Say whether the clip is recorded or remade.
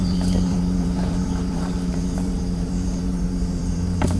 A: remade